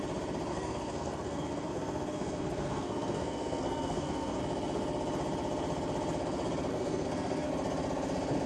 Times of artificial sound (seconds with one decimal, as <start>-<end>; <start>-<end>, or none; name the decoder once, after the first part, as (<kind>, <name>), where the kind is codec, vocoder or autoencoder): 0.5-4.4 (codec, SNAC); 6.7-7.5

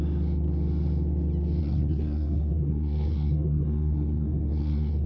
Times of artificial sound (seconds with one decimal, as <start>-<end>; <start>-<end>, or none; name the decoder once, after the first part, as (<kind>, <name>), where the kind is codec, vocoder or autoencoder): 1.6-5.1 (codec, SNAC)

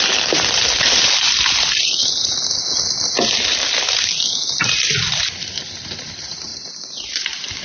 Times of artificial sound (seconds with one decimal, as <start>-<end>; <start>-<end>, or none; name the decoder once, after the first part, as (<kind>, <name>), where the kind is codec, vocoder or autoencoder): none

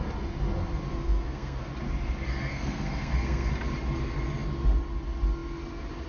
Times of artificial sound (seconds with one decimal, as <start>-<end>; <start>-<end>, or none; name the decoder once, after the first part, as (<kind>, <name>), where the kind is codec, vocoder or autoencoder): 0.9-1.7 (codec, SNAC); 2.5-3.5

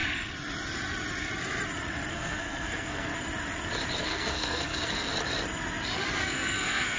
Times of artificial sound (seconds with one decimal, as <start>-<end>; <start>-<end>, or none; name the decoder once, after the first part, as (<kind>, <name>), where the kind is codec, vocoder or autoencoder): 2.1-3.1 (codec, SNAC); 4.0-5.1; 6.2-7.0

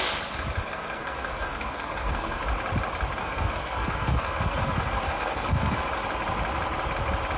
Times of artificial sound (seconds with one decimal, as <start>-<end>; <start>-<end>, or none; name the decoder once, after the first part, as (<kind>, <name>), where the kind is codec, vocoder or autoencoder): 0.6-2.4 (codec, SNAC); 3.2-5.8

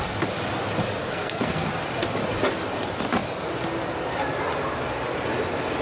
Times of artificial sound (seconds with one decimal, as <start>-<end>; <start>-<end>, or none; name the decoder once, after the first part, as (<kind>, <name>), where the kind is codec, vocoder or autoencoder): 1.0-1.7 (codec, SNAC)